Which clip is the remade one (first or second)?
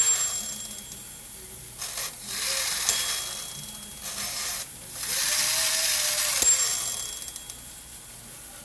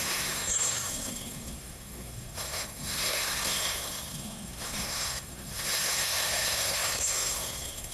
second